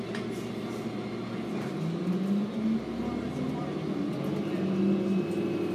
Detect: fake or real real